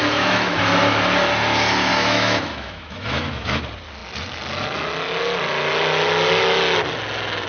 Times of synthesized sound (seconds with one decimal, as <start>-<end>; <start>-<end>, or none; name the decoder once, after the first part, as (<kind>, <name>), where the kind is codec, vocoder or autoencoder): 0.0-0.6 (autoencoder, DAC-VAE); 1.9-3.6